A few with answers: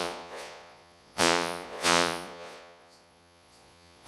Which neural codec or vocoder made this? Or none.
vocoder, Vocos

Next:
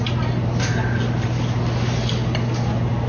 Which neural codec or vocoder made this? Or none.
none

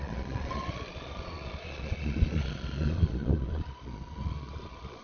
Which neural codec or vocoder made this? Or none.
vocoder, Vocos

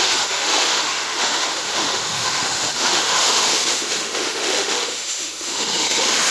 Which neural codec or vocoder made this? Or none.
autoencoder, DAC-VAE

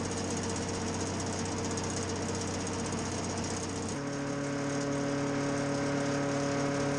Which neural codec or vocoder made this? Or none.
none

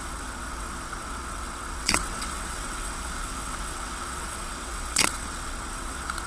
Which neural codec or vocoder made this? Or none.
vocoder, WaveNeXt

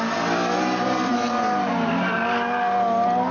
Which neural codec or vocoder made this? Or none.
none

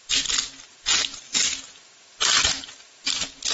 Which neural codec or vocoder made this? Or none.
none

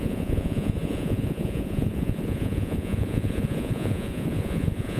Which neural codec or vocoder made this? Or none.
vocoder, Vocos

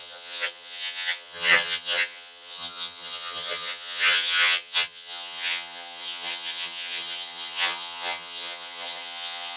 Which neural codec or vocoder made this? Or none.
vocoder, HiFi-GAN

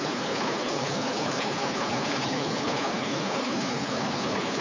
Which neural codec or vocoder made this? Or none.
codec, HILCodec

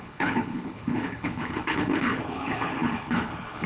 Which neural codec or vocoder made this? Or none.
codec, HILCodec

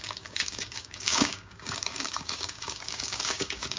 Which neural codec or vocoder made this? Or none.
codec, DAC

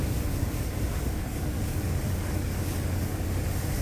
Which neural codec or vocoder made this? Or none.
codec, DAC